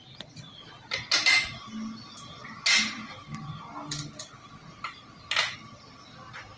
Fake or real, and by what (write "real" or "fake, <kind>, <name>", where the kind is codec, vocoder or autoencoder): real